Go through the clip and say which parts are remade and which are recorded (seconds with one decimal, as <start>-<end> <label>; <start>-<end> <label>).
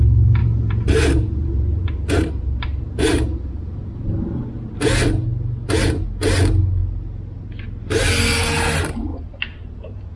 0.0-0.4 recorded; 0.4-4.4 remade; 4.4-9.1 recorded; 9.1-10.2 remade